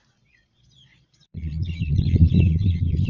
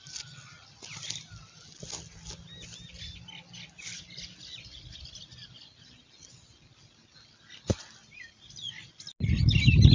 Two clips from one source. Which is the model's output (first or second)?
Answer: first